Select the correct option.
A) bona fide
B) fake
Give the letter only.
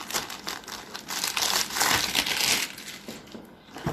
A